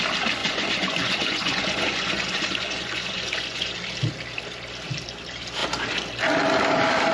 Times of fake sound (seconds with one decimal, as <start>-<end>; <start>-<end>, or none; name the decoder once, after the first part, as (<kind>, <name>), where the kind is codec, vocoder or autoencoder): 0.4-3.7 (vocoder, Vocos)